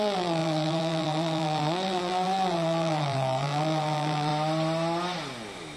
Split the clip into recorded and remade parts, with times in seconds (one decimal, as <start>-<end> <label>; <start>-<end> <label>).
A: 0.0-4.3 remade; 4.3-5.8 recorded